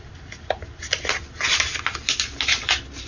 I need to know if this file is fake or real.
real